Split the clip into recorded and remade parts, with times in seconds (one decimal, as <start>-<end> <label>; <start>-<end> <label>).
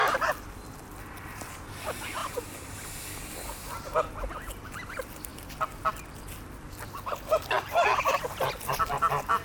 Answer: 0.0-9.4 recorded